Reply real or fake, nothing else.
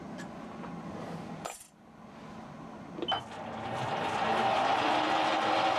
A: real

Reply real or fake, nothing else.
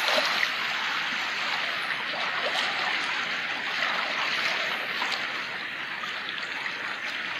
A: real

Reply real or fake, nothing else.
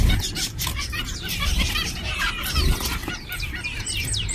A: fake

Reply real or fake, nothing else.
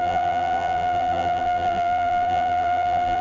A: fake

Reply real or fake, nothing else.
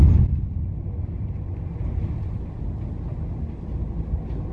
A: real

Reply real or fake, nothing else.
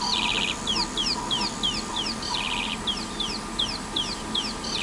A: real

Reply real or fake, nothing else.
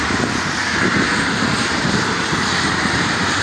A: fake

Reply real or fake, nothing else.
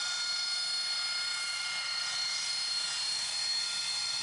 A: fake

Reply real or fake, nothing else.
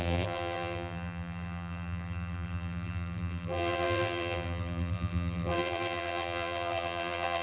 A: fake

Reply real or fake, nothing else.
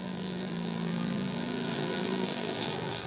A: fake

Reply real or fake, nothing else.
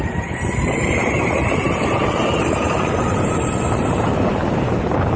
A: fake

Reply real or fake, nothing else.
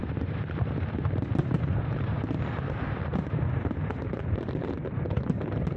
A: fake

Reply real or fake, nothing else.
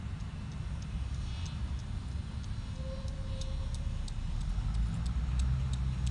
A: real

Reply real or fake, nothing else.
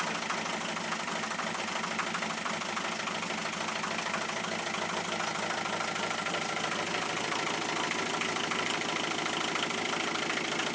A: real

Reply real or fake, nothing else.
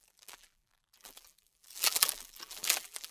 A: fake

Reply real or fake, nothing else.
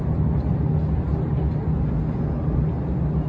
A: real